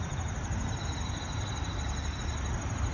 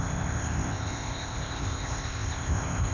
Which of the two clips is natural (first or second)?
first